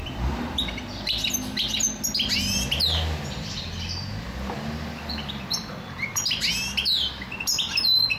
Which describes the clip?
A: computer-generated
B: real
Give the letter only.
B